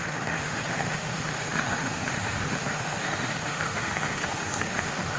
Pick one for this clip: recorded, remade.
remade